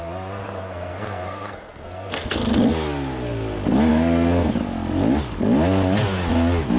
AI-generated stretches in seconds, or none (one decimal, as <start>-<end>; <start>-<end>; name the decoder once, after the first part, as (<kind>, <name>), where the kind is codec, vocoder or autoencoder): 0.4-2.6 (codec, SNAC); 3.9-4.5